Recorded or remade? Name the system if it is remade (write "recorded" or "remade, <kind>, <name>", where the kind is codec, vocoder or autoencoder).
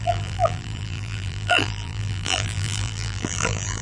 remade, vocoder, BigVGAN v2